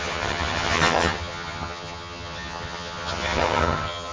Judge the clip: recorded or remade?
remade